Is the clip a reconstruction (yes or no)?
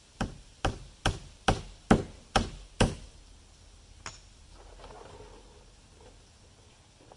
no